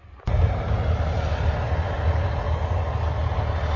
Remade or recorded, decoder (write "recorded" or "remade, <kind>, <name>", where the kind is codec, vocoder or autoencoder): recorded